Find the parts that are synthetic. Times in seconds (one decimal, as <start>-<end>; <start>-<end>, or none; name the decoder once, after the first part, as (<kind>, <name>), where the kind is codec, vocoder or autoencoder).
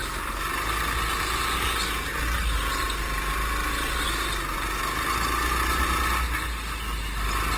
none